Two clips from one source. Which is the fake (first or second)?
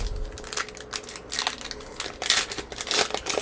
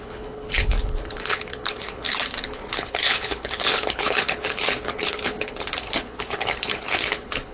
second